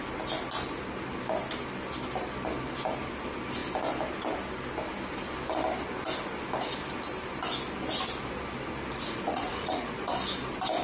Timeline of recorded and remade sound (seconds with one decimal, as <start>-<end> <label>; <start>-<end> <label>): 0.0-8.9 recorded; 8.9-10.1 remade; 10.1-10.8 recorded